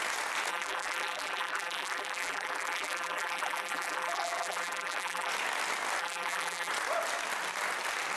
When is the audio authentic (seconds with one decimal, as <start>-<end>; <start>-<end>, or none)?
0.0-0.5; 5.3-6.0; 6.7-8.2